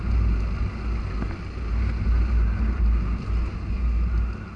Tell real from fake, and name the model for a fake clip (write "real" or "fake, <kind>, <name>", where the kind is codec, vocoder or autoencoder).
real